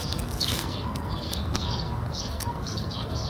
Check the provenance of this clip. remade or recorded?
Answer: remade